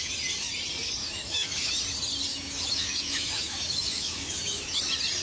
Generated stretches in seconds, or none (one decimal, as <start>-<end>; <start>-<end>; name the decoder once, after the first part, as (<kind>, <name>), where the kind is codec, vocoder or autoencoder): 1.0-1.7 (autoencoder, DAC-VAE); 2.3-4.8